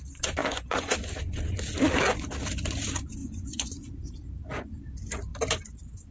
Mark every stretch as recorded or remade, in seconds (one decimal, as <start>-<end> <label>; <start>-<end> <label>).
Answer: 0.0-0.4 recorded; 0.4-0.9 remade; 0.9-3.2 recorded; 3.2-3.9 remade; 3.9-6.1 recorded